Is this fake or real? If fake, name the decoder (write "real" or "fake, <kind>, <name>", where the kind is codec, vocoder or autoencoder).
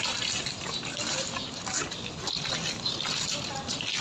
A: real